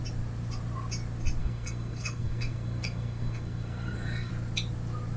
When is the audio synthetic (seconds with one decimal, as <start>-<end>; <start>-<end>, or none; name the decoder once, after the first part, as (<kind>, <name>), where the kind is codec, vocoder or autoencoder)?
1.4-4.3 (codec, SNAC)